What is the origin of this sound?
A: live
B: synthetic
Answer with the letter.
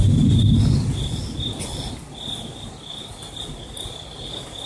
A